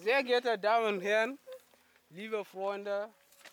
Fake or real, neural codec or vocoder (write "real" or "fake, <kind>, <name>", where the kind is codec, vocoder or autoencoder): real